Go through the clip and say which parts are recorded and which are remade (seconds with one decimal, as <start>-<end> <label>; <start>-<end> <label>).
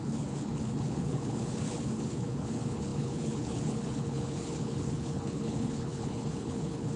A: 0.0-7.0 remade